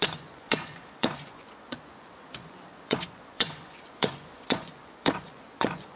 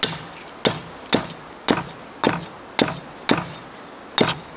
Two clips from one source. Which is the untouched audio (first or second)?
second